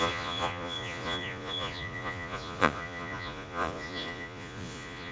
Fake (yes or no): yes